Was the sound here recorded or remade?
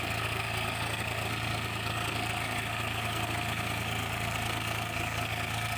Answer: remade